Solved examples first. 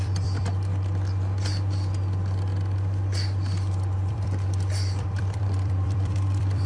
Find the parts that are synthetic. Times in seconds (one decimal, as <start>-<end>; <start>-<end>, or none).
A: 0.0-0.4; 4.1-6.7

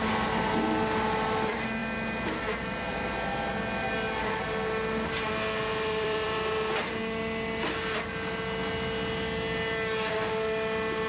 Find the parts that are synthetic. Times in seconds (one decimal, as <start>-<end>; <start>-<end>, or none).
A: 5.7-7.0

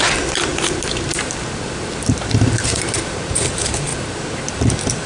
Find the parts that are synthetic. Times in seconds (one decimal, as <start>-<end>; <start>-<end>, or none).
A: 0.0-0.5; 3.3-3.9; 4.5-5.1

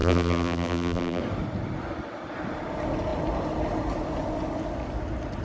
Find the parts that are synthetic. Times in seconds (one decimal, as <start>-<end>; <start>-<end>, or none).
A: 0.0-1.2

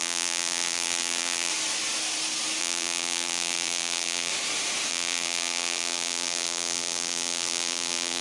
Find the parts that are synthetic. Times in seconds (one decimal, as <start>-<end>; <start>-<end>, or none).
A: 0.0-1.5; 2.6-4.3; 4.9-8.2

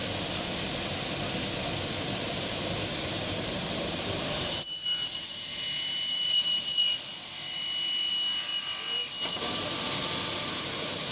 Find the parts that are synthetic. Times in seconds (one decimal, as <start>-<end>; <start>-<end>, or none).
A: 2.9-6.7; 8.1-8.5; 9.9-11.1